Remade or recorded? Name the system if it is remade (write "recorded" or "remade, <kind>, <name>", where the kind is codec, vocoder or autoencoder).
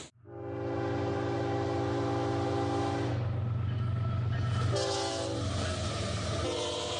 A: recorded